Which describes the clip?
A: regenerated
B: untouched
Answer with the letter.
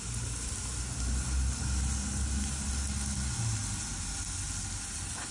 B